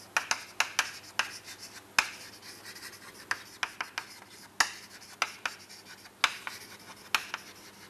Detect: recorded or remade recorded